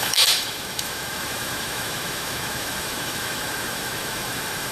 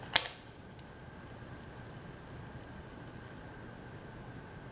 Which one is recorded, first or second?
second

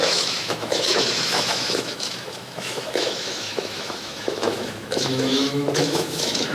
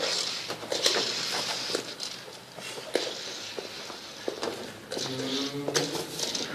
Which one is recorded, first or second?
second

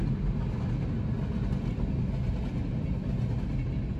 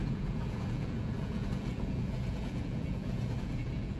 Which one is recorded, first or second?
first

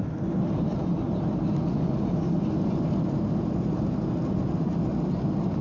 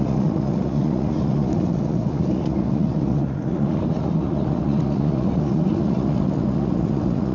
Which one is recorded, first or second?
first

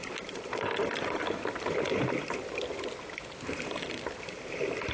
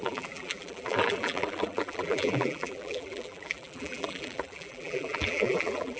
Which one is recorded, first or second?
first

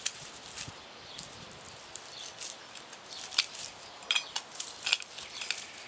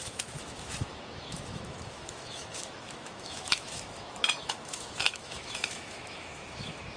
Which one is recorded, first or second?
first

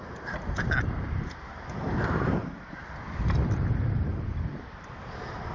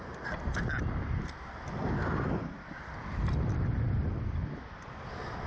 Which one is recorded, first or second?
second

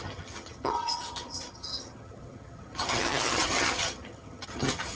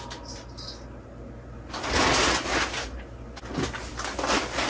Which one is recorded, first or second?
second